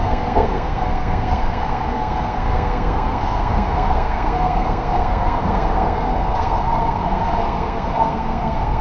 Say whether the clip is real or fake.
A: fake